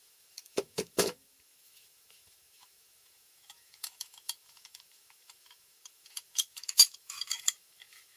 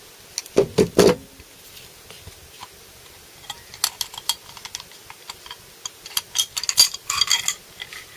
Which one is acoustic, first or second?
second